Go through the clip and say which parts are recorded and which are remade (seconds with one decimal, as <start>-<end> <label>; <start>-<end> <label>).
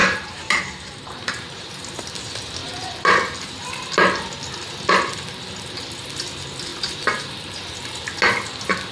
0.0-2.0 remade; 2.0-2.6 recorded; 2.6-3.9 remade; 3.9-6.7 recorded; 6.7-7.8 remade; 7.8-8.9 recorded